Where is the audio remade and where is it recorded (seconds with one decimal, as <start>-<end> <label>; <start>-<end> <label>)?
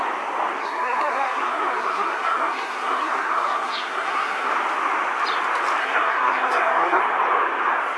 0.0-0.6 recorded; 0.6-4.5 remade; 4.5-5.8 recorded; 5.8-7.0 remade; 7.0-8.0 recorded